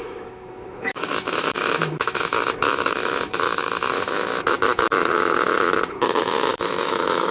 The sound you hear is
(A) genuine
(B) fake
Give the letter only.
B